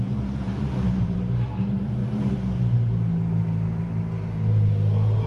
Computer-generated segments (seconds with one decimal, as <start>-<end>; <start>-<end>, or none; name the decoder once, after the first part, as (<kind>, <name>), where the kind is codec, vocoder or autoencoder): 0.0-2.0 (vocoder, BigVGAN v2)